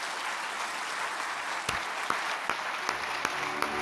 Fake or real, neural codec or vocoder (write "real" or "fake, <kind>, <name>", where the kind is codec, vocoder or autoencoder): real